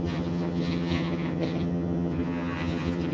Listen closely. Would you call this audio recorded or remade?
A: remade